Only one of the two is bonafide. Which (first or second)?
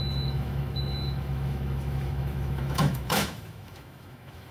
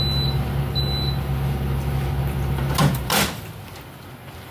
second